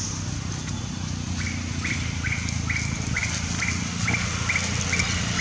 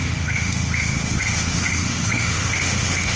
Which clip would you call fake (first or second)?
second